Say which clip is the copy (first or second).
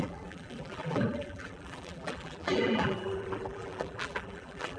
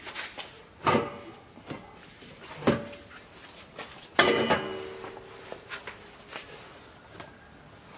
first